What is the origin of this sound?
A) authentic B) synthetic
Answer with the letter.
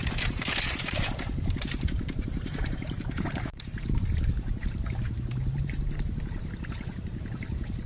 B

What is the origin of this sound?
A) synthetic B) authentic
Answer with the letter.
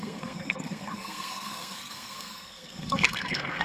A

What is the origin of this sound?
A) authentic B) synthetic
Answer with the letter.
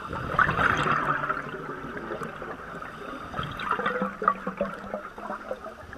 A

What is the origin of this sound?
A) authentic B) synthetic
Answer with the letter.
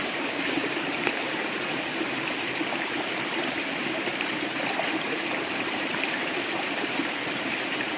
B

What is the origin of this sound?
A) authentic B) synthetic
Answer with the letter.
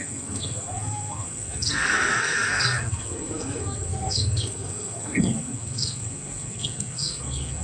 B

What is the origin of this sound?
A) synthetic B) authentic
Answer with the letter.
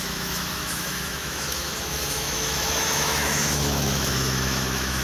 A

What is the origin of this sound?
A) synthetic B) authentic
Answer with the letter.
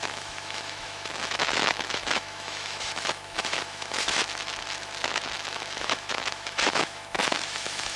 A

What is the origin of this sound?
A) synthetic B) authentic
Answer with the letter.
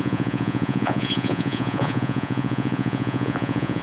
A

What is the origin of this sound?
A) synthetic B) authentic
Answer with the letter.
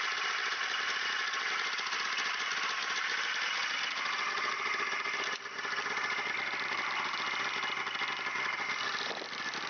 B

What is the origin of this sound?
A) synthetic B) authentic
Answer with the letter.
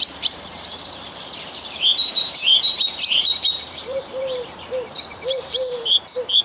A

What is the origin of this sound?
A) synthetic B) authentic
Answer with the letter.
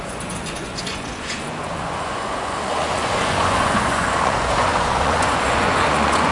A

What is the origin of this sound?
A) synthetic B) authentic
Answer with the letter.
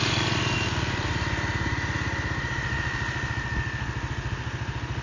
B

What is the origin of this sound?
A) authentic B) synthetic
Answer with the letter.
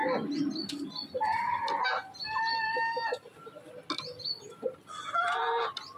A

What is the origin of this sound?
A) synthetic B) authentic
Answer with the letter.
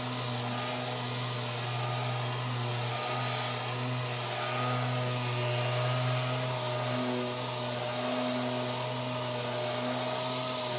B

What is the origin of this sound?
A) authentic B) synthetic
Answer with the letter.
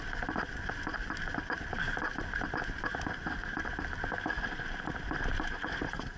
A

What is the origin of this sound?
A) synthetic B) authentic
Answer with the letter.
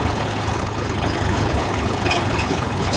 A